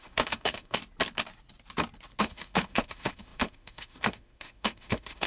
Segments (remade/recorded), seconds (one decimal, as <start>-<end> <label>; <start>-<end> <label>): 0.0-0.8 remade; 0.8-2.2 recorded; 2.2-5.3 remade